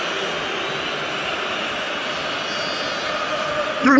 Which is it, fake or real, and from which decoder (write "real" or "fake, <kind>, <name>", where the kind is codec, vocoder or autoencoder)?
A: real